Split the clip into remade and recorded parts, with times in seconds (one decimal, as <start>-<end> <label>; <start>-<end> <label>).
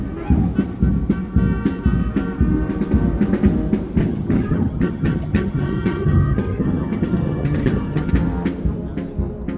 0.0-4.0 recorded; 4.0-8.1 remade; 8.1-9.6 recorded